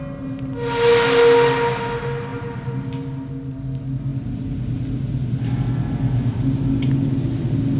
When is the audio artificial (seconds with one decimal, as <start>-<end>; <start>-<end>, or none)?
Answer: 2.3-2.8